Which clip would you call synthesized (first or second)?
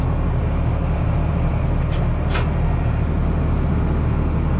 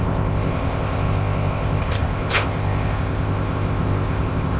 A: second